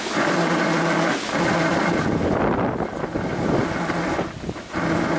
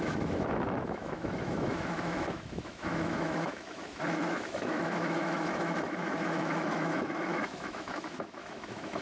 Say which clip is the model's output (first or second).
second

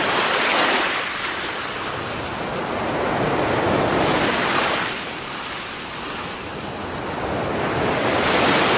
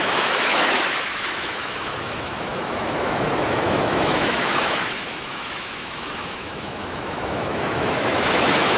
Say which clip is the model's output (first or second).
second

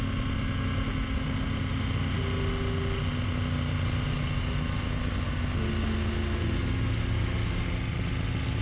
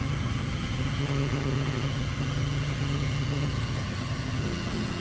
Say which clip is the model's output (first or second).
second